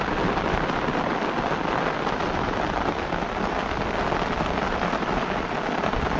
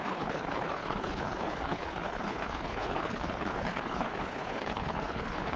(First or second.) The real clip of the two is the first